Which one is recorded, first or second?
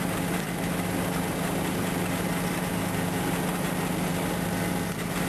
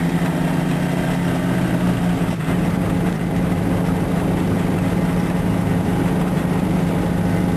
first